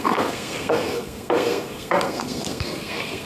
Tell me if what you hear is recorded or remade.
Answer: remade